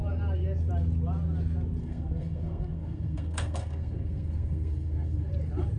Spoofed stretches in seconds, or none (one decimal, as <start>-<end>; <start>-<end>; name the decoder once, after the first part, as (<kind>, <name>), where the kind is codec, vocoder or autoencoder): 1.8-5.3 (codec, SNAC)